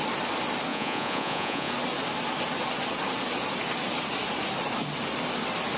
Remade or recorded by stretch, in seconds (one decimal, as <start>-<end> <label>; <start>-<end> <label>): 0.0-0.7 recorded; 0.7-1.7 remade; 1.7-5.8 recorded